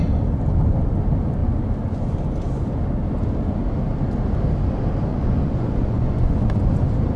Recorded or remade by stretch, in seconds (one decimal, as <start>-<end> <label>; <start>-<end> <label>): 0.0-5.1 recorded; 5.1-6.8 remade; 6.8-7.2 recorded